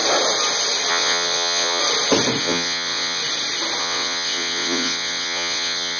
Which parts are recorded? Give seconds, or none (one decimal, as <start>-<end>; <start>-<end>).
0.0-0.9; 1.8-2.4; 3.2-3.8